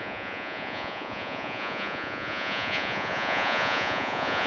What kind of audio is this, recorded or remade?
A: remade